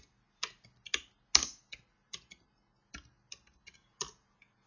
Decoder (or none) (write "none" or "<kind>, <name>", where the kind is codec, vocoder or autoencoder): none